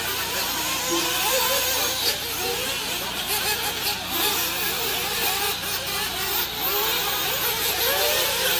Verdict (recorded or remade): recorded